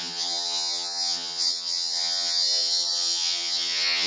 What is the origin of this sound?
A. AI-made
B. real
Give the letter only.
A